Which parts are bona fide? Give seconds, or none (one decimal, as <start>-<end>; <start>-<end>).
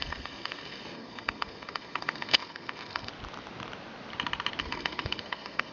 3.1-4.6